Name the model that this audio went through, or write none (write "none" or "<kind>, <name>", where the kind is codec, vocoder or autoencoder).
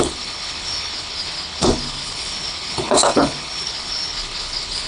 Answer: codec, HILCodec